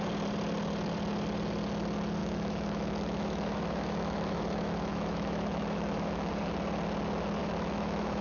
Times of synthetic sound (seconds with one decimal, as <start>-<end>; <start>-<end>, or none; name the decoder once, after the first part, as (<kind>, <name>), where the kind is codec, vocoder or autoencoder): 2.2-6.3 (autoencoder, DAC-VAE); 7.4-8.2